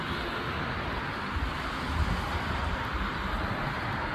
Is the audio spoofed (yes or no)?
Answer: no